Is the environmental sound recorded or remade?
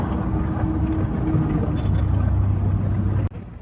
recorded